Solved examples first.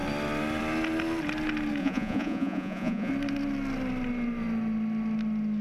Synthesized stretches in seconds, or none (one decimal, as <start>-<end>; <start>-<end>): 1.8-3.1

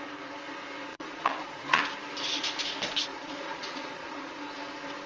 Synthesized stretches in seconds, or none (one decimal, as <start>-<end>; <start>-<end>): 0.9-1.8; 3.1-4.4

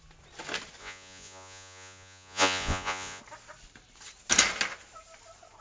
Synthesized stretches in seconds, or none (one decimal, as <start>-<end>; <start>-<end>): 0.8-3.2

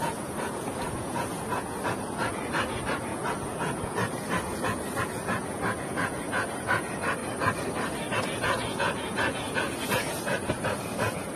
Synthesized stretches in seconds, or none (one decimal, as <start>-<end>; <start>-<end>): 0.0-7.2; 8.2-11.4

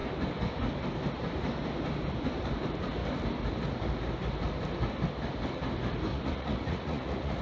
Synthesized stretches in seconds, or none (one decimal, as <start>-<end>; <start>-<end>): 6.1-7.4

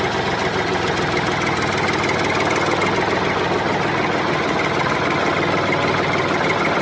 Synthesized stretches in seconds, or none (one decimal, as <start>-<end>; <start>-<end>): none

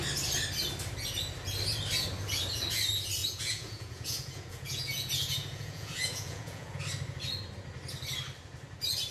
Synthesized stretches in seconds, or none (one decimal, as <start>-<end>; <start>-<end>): 3.2-6.8

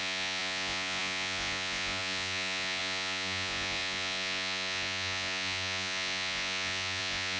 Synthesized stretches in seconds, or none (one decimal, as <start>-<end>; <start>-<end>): 0.0-7.4